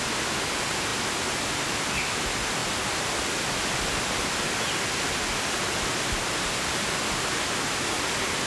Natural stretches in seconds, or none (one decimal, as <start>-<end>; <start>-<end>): 0.0-8.5

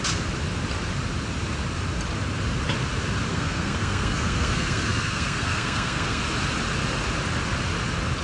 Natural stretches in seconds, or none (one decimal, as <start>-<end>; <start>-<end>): 0.0-3.3; 6.2-8.2

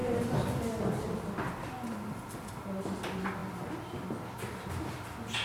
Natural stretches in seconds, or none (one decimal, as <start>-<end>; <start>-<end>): 0.0-5.4

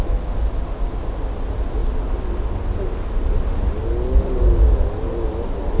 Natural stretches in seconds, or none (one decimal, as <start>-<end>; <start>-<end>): 0.0-5.8

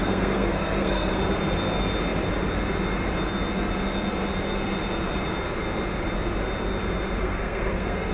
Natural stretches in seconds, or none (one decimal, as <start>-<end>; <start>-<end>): 1.2-7.2

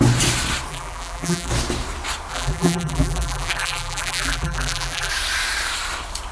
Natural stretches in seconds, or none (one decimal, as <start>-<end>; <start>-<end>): 0.0-0.7; 1.5-2.3; 5.1-6.3

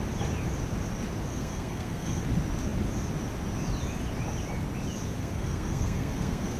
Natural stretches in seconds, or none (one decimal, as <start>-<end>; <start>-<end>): 0.0-1.3; 2.2-5.2